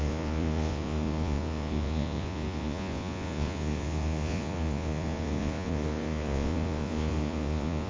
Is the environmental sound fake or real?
fake